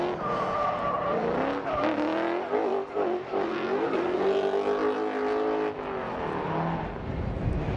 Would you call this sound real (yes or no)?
yes